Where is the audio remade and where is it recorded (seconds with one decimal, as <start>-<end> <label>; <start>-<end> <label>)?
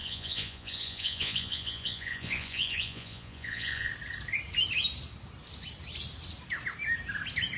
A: 0.0-3.9 remade; 3.9-7.6 recorded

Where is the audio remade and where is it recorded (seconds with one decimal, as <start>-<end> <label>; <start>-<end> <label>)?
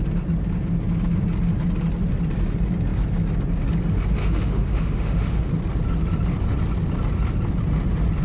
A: 0.0-4.2 recorded; 4.2-5.5 remade; 5.5-8.2 recorded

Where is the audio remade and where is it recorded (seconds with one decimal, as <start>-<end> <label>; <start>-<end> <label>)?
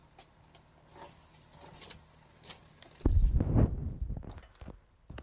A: 0.0-3.1 remade; 3.1-5.2 recorded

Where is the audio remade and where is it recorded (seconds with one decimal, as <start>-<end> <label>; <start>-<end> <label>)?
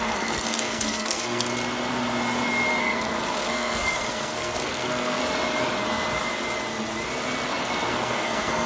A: 0.0-1.5 remade; 1.5-2.8 recorded; 2.8-5.2 remade; 5.2-7.6 recorded; 7.6-8.7 remade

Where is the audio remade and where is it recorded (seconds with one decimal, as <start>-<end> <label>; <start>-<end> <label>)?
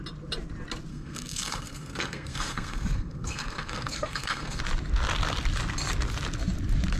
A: 0.0-0.9 recorded; 0.9-4.6 remade; 4.6-7.0 recorded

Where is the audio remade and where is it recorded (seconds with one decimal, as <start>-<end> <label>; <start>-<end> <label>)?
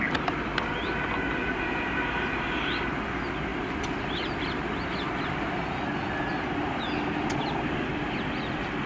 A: 0.0-8.9 recorded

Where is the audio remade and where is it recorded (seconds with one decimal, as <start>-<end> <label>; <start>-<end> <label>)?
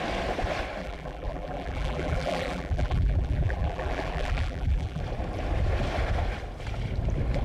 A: 0.0-0.8 recorded; 0.8-5.0 remade; 5.0-7.4 recorded